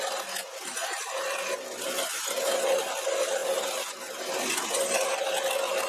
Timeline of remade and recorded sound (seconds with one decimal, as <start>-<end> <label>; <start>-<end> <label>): 0.0-5.9 recorded